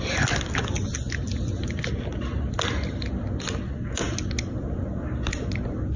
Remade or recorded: recorded